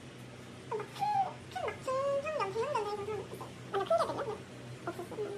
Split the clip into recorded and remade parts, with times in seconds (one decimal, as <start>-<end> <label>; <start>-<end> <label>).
0.0-0.9 recorded; 0.9-1.4 remade; 1.4-5.4 recorded